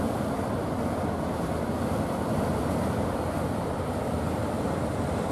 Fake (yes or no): yes